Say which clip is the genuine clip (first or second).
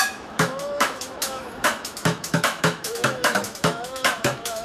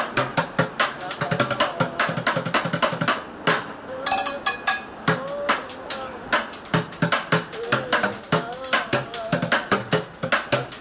second